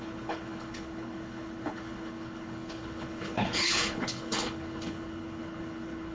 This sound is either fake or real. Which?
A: fake